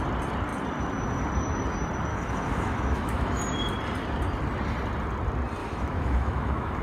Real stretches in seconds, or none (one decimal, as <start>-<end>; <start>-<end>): 0.0-2.1; 3.4-5.6